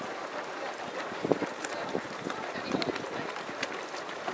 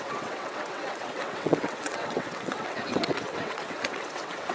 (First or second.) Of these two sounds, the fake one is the second